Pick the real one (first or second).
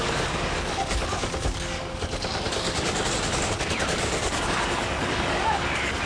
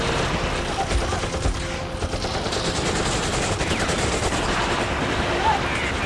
second